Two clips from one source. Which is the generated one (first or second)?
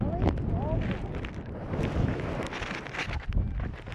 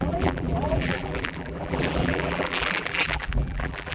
second